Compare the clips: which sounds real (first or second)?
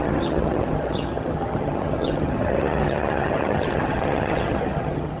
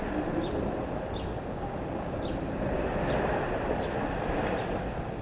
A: second